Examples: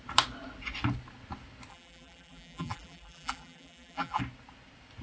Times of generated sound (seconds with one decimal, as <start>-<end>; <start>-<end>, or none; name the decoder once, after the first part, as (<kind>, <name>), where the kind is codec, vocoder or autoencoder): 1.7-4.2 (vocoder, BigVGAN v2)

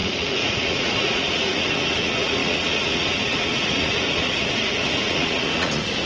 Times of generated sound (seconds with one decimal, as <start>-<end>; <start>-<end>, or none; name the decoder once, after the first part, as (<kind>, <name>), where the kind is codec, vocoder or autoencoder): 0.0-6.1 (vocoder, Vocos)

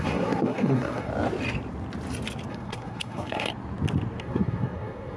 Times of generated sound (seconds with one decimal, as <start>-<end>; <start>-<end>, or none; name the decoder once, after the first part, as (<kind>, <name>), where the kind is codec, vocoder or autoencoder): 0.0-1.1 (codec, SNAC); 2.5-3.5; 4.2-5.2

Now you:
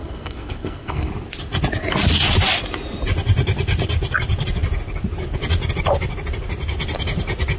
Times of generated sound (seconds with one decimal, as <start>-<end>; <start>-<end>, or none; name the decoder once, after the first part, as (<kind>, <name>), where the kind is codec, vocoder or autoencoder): 0.0-1.1 (codec, SNAC)

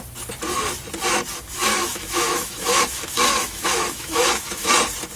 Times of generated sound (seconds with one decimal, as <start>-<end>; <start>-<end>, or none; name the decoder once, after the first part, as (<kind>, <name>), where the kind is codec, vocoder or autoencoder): 1.6-4.7 (autoencoder, DAC-VAE)

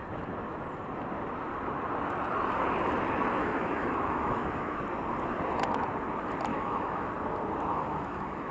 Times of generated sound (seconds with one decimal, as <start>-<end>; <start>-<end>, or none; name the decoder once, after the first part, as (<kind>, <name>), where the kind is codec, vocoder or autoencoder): 3.4-4.8 (autoencoder, DAC-VAE); 6.5-7.1; 7.7-8.5